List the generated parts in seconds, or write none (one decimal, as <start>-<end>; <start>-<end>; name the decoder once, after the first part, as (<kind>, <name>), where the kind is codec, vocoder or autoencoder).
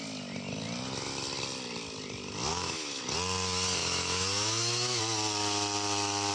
2.5-3.0 (autoencoder, DAC-VAE); 3.8-5.0